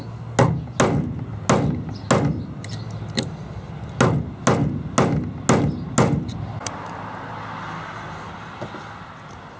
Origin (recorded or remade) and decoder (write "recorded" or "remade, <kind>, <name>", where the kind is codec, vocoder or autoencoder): recorded